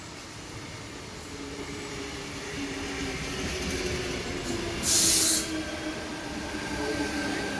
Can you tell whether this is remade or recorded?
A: recorded